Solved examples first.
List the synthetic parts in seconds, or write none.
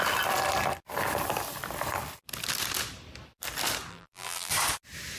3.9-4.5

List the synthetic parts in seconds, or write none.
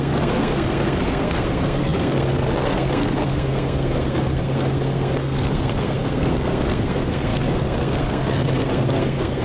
0.0-9.4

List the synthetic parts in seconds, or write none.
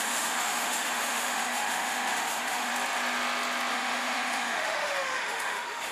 0.0-2.7; 3.7-5.9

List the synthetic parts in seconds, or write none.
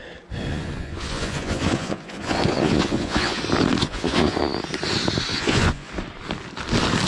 0.5-3.4; 3.8-4.4; 5.3-5.9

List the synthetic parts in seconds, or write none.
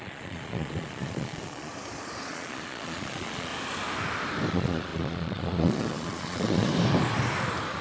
0.0-1.7; 2.3-3.5; 4.5-6.7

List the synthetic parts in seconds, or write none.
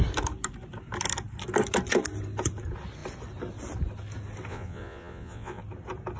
4.5-5.6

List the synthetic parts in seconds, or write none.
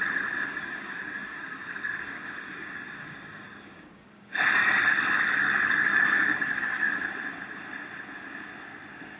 0.5-4.4; 5.9-7.0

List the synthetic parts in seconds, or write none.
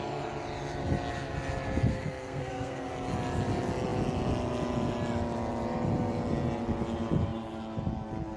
1.9-2.9